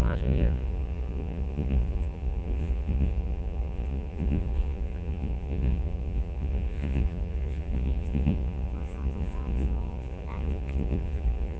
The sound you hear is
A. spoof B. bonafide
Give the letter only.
A